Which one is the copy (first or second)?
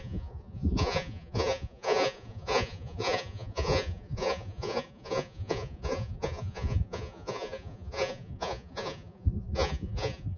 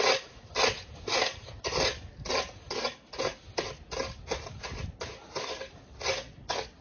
first